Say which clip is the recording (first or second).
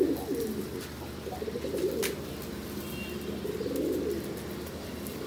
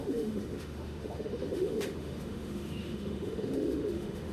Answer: first